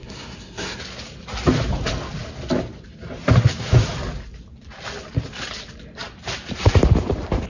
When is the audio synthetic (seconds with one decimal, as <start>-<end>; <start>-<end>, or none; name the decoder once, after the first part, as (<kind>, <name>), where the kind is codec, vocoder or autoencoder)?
0.0-0.8 (codec, SNAC)